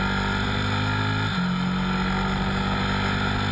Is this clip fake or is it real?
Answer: real